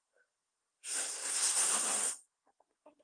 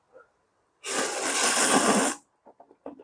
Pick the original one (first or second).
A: second